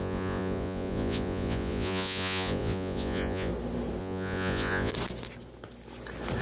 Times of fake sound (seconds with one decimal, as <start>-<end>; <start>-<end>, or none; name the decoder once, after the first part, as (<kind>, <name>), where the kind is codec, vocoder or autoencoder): 0.0-3.5 (vocoder, Vocos); 4.0-4.9